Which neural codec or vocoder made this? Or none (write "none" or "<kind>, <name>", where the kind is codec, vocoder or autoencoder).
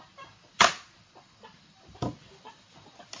vocoder, BigVGAN v2